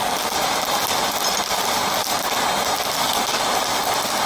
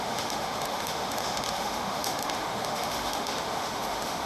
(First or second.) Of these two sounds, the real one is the first